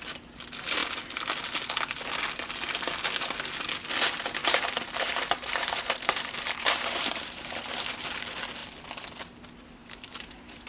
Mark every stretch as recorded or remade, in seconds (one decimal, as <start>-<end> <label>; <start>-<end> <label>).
0.0-4.4 recorded; 4.4-8.0 remade; 8.0-9.8 recorded; 9.8-10.7 remade